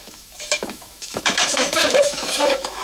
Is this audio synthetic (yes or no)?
yes